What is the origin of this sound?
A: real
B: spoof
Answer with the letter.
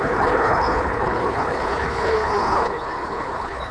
B